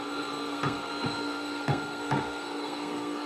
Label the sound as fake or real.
fake